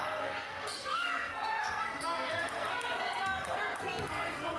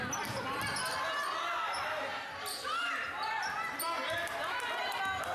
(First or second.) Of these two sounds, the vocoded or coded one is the first